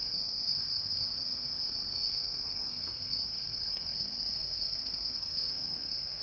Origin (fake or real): fake